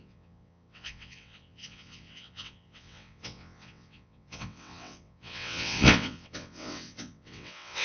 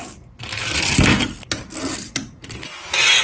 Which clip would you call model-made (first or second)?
first